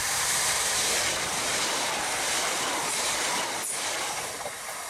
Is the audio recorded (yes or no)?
no